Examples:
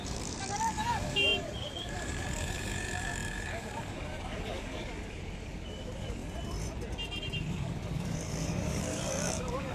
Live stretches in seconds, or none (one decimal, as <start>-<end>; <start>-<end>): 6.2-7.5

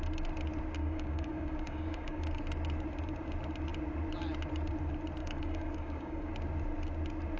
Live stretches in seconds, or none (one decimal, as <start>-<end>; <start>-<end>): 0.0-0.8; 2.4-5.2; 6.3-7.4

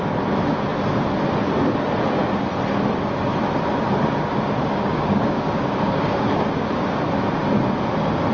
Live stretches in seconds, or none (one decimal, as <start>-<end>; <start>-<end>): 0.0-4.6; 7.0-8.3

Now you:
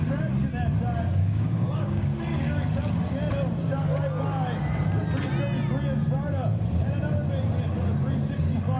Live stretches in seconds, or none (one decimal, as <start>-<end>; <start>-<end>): 0.0-1.2; 2.2-8.8

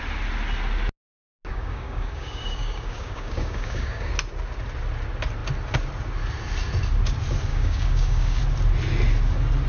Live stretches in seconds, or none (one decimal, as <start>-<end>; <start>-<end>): 0.0-1.5; 4.1-7.5; 8.4-9.7